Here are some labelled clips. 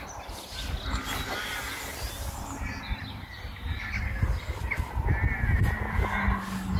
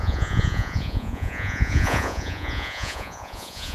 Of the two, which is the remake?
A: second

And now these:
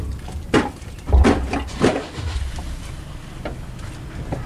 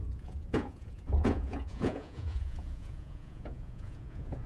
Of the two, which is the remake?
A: second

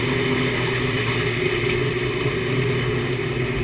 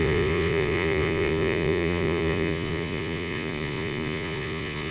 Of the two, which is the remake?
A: second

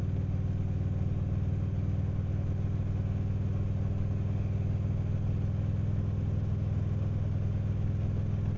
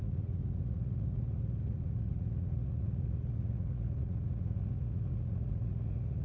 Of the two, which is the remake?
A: second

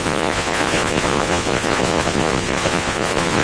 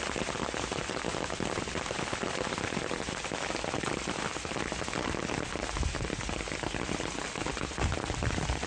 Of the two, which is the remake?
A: first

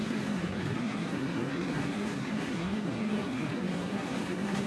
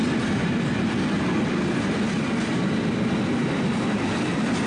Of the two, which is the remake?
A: first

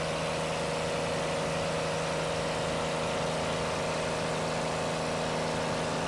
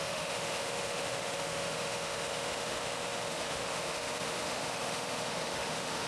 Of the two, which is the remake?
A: second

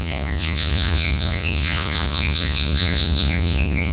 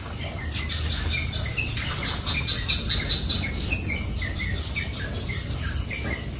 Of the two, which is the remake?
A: first